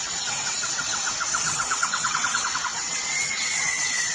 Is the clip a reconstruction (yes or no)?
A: yes